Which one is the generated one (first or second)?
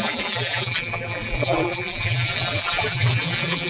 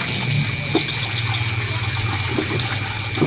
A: first